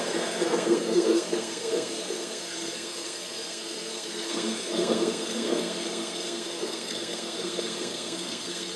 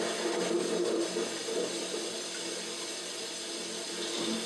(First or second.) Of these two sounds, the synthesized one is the first